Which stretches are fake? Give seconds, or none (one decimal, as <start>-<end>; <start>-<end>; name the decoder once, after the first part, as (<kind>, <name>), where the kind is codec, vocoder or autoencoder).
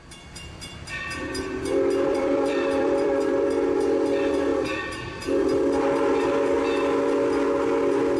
0.0-3.4 (vocoder, BigVGAN v2); 4.5-5.6